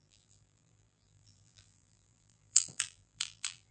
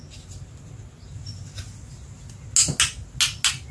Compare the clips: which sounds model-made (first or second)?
first